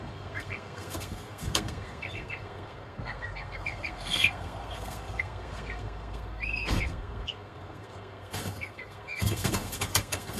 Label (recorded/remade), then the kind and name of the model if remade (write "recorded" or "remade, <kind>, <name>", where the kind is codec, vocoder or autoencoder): remade, codec, SNAC